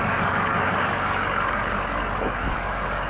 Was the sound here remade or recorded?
remade